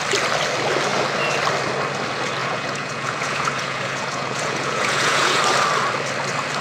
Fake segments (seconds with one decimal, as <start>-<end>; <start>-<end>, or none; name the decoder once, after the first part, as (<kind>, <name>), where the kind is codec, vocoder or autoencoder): 2.4-5.4 (vocoder, Vocos)